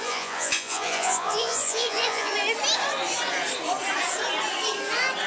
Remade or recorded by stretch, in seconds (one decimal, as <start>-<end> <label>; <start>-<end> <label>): 0.0-2.3 remade; 2.3-5.3 recorded